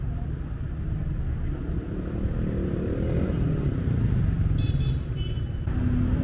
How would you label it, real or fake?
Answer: real